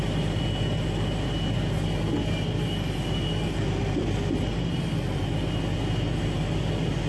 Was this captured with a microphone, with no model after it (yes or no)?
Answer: yes